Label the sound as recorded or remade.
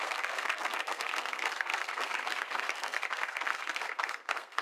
remade